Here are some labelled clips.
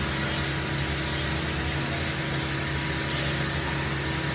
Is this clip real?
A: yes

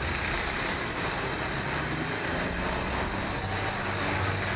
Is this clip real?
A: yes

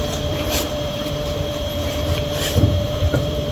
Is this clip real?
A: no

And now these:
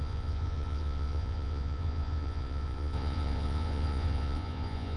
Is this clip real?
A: no